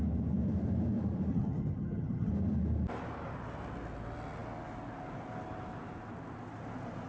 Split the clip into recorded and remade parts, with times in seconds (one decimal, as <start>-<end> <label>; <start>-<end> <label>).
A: 0.0-1.3 recorded; 1.3-2.3 remade; 2.3-7.1 recorded